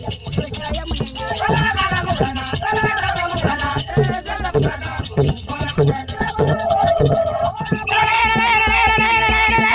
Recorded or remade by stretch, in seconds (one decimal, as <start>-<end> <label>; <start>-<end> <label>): 0.0-0.7 remade; 0.7-1.3 recorded; 1.3-3.9 remade; 3.9-4.5 recorded; 4.5-8.2 remade; 8.2-9.7 recorded